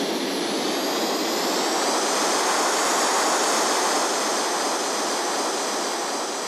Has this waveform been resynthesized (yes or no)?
no